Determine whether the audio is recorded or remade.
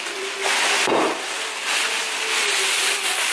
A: recorded